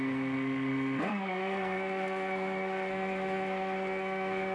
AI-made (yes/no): yes